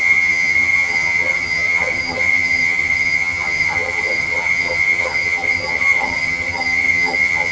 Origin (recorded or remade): remade